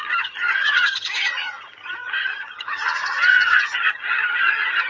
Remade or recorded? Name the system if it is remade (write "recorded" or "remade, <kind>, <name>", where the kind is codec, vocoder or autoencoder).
remade, vocoder, HiFi-GAN